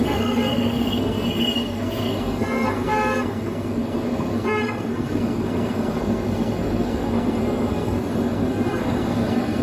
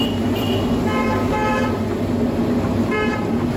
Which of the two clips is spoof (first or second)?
first